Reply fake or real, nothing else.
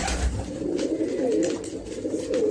real